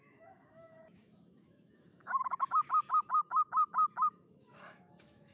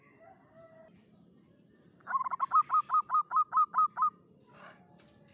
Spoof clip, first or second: first